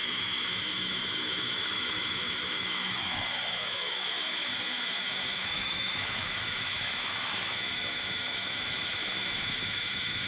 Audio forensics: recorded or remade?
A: remade